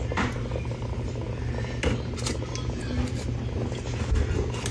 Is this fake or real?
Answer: real